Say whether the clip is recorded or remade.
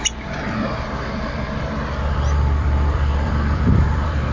remade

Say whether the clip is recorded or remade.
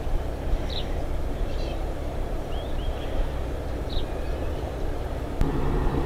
remade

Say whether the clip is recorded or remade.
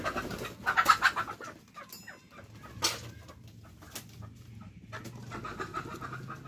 recorded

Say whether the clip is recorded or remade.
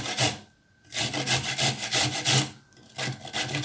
recorded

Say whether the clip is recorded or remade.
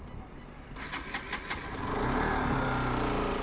recorded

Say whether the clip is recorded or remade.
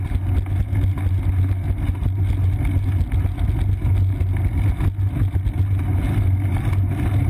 recorded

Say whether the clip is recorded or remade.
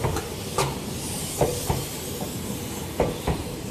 recorded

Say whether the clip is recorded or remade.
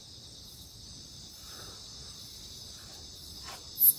recorded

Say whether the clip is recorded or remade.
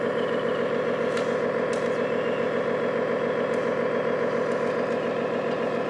recorded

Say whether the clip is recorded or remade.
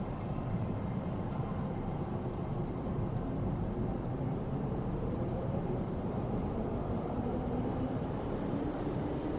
remade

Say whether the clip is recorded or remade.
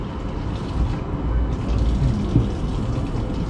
recorded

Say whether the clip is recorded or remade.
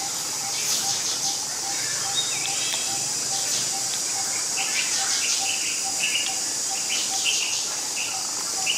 recorded